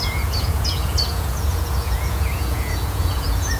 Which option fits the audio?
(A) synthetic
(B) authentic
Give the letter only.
A